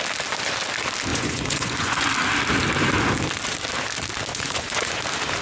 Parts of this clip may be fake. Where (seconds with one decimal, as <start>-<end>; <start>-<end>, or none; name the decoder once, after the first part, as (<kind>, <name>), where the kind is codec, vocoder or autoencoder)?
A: 1.1-2.1 (vocoder, Vocos); 4.3-5.0